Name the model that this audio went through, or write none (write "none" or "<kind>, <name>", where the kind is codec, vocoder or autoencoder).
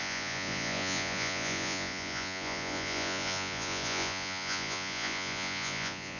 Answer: vocoder, Vocos